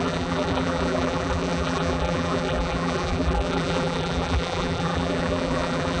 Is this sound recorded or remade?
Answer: remade